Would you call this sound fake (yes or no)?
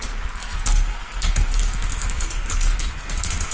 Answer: yes